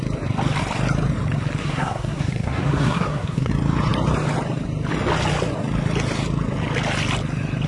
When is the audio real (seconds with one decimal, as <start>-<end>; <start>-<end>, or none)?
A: 0.0-1.6; 3.5-7.7